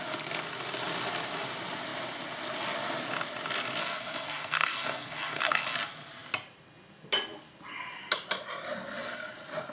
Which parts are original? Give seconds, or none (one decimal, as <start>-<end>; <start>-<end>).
0.0-3.8; 5.6-9.7